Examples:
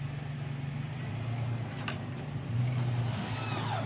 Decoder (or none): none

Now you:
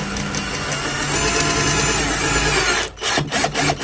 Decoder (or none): none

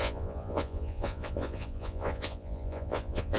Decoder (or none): vocoder, Vocos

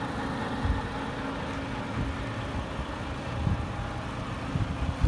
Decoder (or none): none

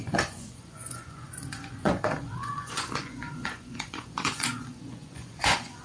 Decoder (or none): vocoder, Vocos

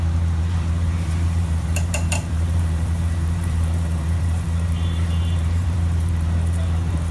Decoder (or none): vocoder, BigVGAN v2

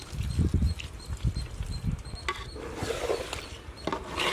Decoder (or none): none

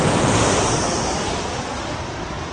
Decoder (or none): vocoder, BigVGAN v2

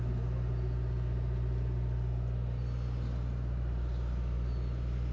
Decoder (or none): none